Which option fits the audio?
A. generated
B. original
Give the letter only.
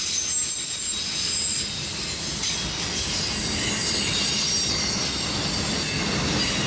B